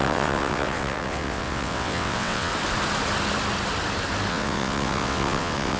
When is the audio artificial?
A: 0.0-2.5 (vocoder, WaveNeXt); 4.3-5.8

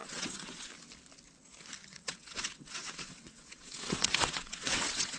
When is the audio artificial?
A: 0.0-0.7 (vocoder, WaveNeXt); 1.9-5.2

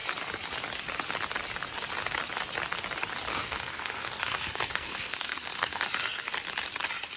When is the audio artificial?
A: 3.3-5.8 (codec, SNAC)

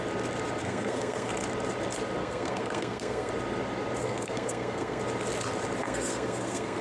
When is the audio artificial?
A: 0.6-1.3 (codec, SNAC); 2.2-3.3; 4.0-5.0; 5.8-6.8